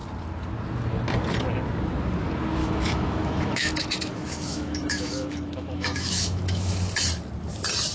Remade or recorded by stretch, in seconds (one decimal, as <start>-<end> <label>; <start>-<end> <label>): 0.0-2.6 recorded; 2.6-6.7 remade; 6.7-7.9 recorded